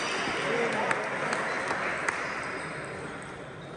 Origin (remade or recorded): recorded